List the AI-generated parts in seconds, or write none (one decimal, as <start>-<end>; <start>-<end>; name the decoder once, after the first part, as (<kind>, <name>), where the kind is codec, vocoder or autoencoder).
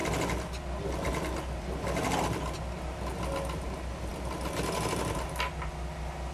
none